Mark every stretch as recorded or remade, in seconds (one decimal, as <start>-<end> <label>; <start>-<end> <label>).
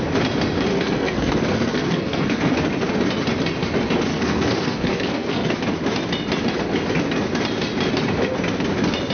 0.0-0.7 recorded; 0.7-2.6 remade; 2.6-4.1 recorded; 4.1-5.5 remade; 5.5-9.1 recorded